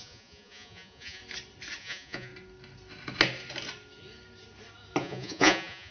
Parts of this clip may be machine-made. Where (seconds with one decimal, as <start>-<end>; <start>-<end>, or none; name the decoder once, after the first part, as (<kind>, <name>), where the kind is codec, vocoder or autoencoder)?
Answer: 0.0-1.2 (vocoder, Vocos); 1.8-2.3; 5.0-5.9